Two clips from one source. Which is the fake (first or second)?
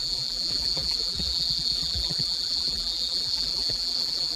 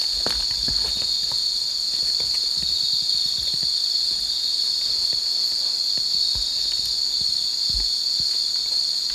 first